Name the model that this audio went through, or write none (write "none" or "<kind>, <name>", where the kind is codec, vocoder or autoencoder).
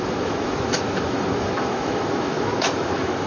autoencoder, DAC-VAE